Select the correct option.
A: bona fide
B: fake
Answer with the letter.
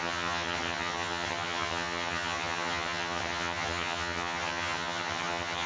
B